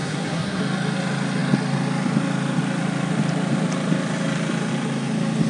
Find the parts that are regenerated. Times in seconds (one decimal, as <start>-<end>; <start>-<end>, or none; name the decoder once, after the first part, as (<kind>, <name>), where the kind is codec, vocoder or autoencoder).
0.0-0.6 (codec, SNAC)